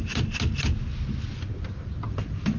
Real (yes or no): yes